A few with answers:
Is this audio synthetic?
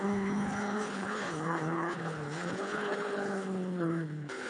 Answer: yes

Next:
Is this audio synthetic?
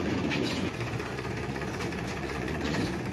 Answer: yes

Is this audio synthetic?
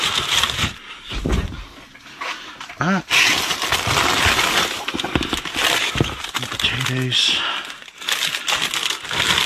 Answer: no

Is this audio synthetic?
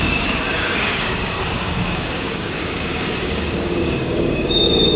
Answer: yes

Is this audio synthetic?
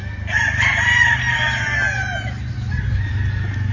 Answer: no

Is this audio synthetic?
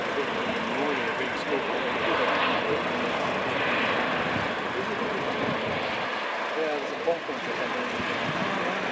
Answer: no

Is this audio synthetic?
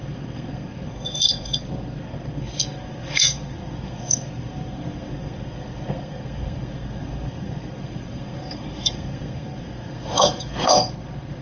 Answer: yes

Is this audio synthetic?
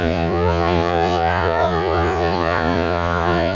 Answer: yes